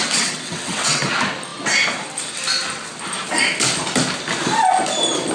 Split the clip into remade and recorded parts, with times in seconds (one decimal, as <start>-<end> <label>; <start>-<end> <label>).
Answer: 0.0-1.0 remade; 1.0-5.3 recorded